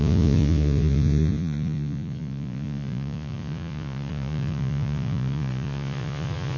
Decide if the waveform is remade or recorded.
remade